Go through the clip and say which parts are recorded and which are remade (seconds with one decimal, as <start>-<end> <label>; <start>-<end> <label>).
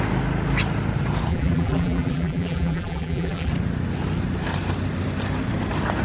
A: 0.0-1.3 recorded; 1.3-3.5 remade; 3.5-6.0 recorded